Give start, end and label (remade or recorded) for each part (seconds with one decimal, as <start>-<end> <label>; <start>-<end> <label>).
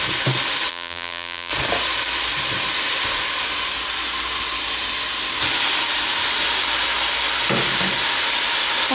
0.0-0.7 recorded; 0.7-1.5 remade; 1.5-8.9 recorded